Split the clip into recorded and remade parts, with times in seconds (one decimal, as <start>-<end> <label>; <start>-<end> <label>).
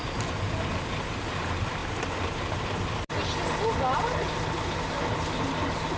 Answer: 0.0-6.0 recorded